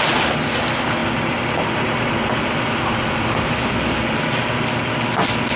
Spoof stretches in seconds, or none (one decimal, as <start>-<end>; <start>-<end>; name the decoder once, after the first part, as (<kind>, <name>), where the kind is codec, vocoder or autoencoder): none